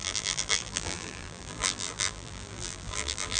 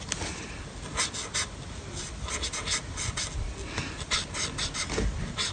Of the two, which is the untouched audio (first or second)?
second